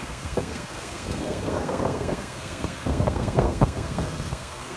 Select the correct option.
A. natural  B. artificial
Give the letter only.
B